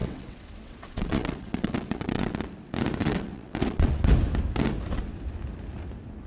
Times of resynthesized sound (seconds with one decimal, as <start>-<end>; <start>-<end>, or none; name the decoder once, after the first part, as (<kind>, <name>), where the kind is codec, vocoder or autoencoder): 0.0-2.5 (vocoder, WaveNeXt); 3.0-4.1